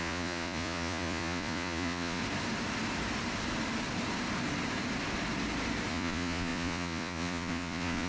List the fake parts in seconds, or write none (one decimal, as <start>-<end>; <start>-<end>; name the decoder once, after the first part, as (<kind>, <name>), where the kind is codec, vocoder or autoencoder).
0.0-2.2 (vocoder, Vocos); 5.9-8.1